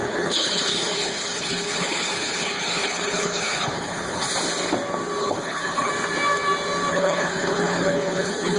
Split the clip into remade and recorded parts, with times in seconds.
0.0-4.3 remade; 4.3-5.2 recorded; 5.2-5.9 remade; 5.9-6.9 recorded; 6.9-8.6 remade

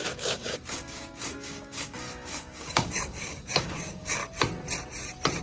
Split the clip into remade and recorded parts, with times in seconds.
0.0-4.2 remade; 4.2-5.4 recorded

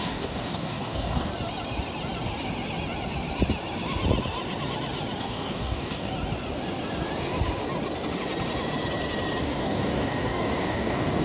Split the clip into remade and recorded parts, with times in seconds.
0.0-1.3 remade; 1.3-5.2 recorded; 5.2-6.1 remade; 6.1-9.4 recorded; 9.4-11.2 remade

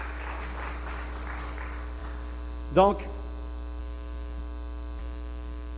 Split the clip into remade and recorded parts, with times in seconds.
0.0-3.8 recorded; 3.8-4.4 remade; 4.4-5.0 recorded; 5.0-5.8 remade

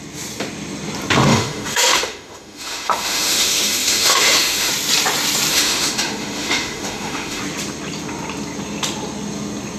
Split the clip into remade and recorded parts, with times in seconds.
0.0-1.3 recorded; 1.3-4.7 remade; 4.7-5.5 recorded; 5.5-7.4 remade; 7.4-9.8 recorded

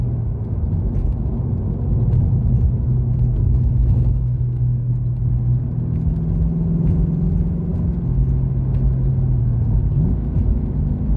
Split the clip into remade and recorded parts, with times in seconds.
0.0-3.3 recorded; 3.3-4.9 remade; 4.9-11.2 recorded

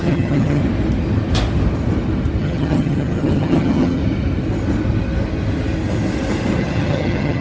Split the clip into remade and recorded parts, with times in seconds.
0.0-0.6 remade; 0.6-2.4 recorded; 2.4-4.0 remade; 4.0-6.6 recorded; 6.6-7.4 remade

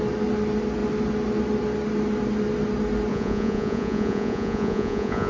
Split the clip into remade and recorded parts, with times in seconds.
0.0-3.1 recorded; 3.1-5.3 remade